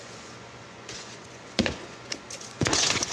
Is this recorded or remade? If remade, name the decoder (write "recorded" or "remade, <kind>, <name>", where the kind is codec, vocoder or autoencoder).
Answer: remade, vocoder, Vocos